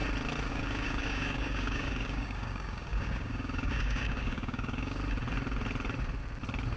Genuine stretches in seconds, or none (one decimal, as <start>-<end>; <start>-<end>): 0.0-0.5; 5.0-6.8